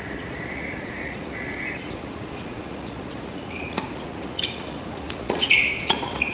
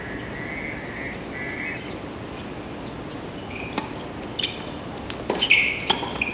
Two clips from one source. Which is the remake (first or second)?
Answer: first